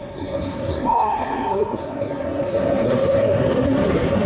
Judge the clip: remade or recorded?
remade